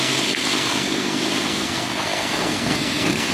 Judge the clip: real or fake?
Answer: fake